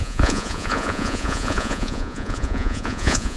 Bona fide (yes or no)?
no